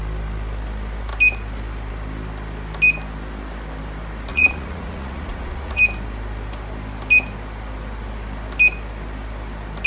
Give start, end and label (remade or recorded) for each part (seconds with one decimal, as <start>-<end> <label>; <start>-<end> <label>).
0.0-4.3 recorded; 4.3-5.8 remade; 5.8-9.9 recorded